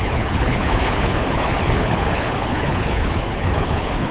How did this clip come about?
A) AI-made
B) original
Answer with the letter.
A